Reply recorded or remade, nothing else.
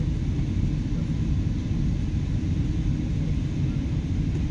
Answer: recorded